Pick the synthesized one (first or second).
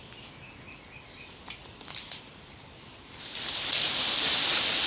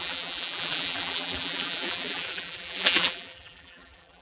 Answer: second